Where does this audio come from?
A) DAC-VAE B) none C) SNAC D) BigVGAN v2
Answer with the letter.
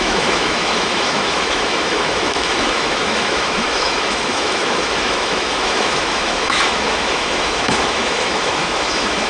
A